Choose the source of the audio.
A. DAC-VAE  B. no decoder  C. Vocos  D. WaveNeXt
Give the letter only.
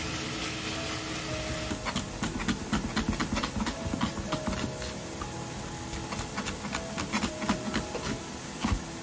B